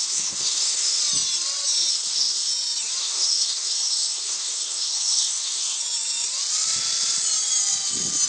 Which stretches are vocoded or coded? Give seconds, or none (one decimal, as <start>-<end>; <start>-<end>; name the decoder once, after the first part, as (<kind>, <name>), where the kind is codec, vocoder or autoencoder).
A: 0.0-1.0 (codec, SNAC); 1.9-2.5; 3.0-5.8